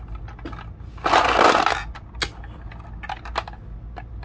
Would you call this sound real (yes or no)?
yes